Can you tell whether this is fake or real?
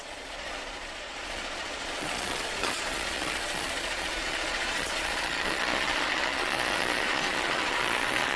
fake